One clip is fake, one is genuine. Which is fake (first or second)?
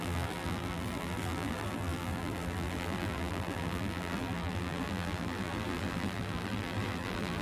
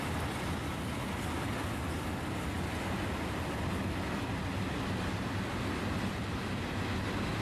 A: first